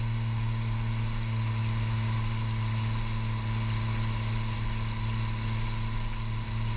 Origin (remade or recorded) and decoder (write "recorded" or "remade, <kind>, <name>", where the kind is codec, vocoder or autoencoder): recorded